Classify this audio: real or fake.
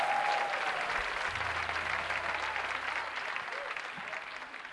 real